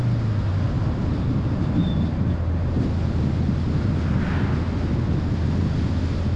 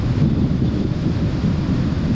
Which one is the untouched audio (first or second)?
first